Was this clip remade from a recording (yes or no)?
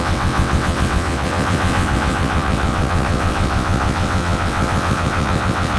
yes